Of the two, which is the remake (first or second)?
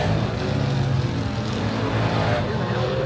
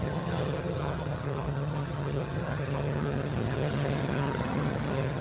second